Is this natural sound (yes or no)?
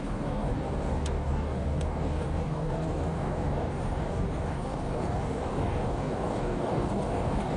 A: no